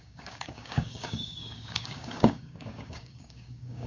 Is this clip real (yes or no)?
no